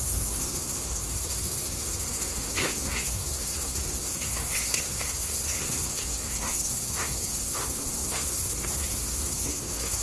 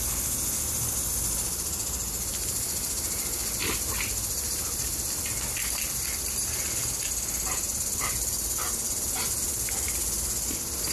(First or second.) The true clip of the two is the second